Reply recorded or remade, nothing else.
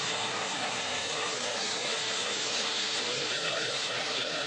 remade